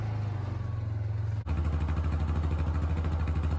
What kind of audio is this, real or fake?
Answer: real